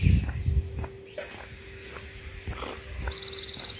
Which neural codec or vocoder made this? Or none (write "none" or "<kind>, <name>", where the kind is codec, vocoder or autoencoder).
none